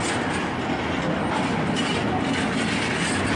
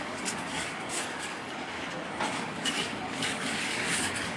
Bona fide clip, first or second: first